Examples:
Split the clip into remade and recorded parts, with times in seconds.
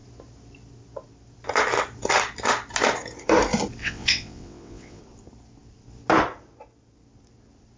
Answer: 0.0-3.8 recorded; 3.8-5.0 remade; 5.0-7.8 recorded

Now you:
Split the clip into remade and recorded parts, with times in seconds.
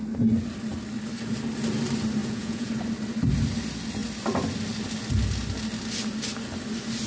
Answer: 0.0-2.2 recorded; 2.2-2.7 remade; 2.7-7.1 recorded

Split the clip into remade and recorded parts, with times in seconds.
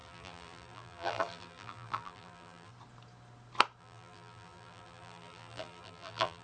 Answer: 0.0-2.7 remade; 2.7-3.8 recorded; 3.8-6.4 remade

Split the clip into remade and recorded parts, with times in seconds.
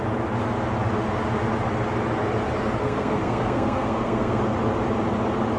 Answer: 0.0-2.8 recorded; 2.8-4.4 remade; 4.4-5.6 recorded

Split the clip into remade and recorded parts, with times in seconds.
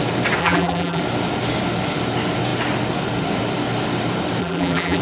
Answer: 0.0-0.4 recorded; 0.4-1.0 remade; 1.0-4.4 recorded; 4.4-5.0 remade